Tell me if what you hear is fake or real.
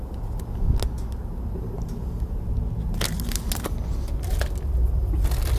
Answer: real